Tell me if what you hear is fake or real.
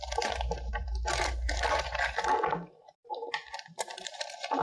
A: fake